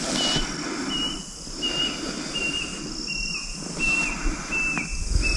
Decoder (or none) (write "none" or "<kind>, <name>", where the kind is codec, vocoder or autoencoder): none